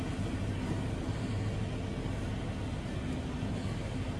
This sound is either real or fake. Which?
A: real